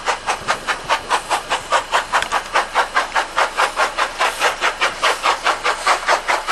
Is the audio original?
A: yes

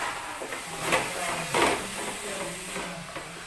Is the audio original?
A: yes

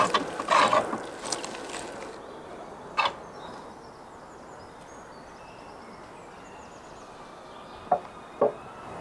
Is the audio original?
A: yes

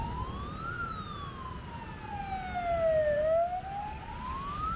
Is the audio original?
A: yes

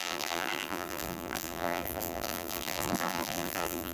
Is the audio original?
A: no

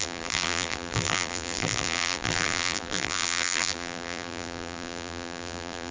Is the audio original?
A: no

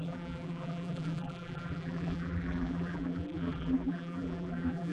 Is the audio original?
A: no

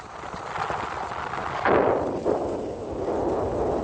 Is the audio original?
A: yes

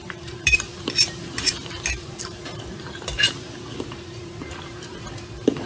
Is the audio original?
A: no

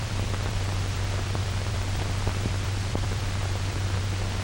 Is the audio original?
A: no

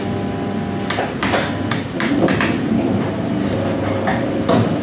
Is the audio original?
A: yes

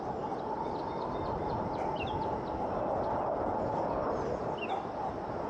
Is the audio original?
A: yes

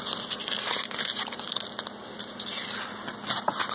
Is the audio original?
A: yes